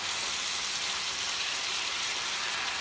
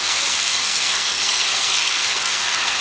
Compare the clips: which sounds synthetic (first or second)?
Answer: second